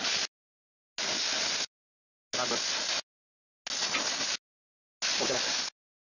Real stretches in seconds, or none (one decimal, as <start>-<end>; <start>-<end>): 0.0-6.1